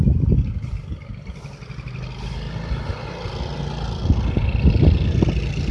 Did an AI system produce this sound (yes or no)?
no